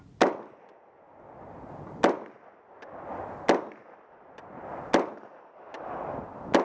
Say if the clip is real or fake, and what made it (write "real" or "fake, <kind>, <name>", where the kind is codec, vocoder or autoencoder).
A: real